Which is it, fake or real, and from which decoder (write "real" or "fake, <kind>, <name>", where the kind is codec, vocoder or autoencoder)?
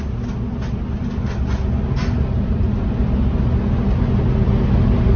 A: real